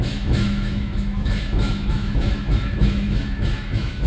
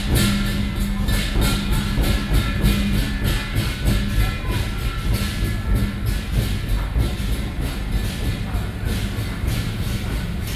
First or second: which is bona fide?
second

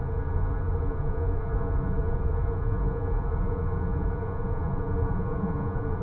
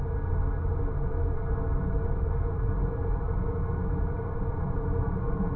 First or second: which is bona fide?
second